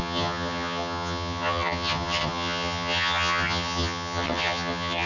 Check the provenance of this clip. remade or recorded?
remade